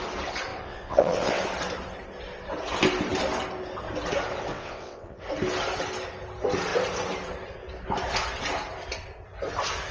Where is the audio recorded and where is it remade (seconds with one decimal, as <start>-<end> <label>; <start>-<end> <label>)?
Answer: 0.0-0.5 recorded; 0.5-1.4 remade; 1.4-4.5 recorded; 4.5-5.2 remade; 5.2-9.9 recorded